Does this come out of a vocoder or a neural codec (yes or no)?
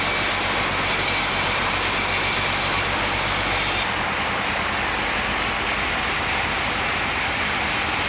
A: no